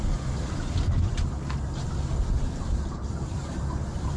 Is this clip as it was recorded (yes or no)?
yes